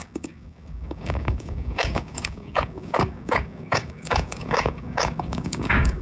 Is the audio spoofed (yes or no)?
yes